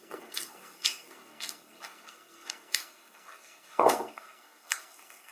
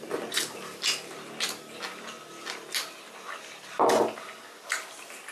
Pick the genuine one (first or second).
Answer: second